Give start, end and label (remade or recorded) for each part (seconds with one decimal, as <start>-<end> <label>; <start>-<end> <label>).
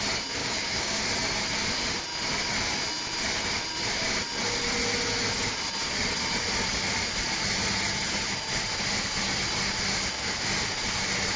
0.0-0.4 recorded; 0.4-1.0 remade; 1.0-11.4 recorded